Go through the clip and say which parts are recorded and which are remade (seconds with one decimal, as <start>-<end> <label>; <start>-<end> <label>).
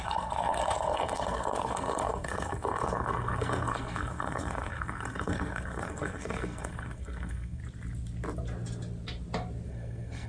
0.0-7.6 remade; 7.6-9.7 recorded; 9.7-10.3 remade